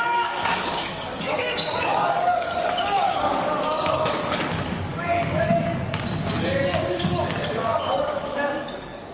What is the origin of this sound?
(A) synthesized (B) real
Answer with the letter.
A